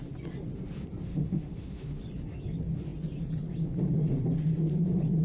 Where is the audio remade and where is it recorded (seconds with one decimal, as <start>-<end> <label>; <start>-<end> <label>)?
0.0-1.1 recorded; 1.1-2.0 remade; 2.0-5.2 recorded